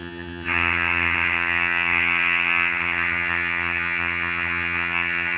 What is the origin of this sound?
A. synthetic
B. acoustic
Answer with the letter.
A